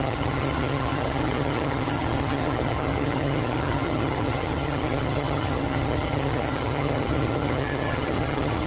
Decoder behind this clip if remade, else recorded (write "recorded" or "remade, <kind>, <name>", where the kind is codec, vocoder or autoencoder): remade, vocoder, HiFi-GAN